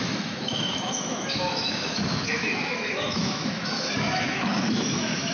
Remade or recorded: remade